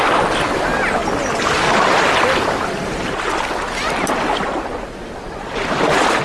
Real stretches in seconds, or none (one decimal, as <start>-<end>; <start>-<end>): 0.0-6.2